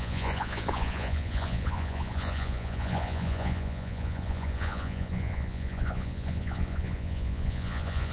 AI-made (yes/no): yes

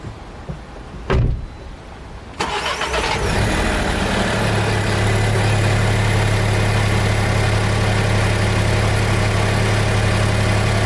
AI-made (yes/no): no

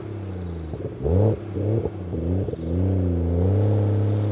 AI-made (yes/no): no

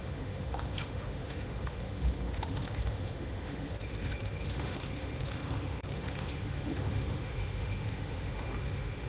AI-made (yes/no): yes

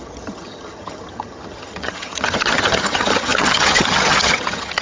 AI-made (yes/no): yes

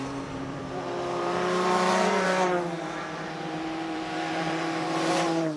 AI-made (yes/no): yes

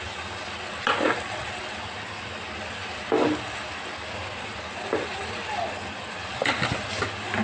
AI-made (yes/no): no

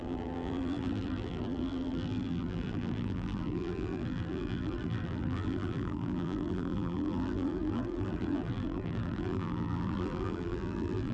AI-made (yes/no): yes